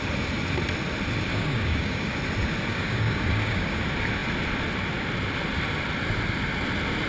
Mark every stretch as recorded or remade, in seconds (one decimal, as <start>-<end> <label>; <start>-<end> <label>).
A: 0.0-1.3 recorded; 1.3-2.2 remade; 2.2-2.7 recorded; 2.7-3.8 remade; 3.8-7.1 recorded